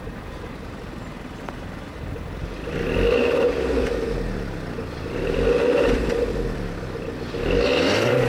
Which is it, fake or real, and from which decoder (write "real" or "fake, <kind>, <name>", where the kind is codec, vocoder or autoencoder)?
fake, vocoder, BigVGAN v2